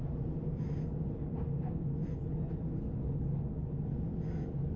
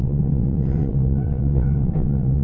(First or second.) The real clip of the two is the first